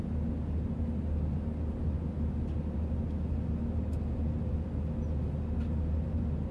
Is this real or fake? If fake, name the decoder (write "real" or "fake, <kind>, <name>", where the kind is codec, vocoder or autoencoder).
real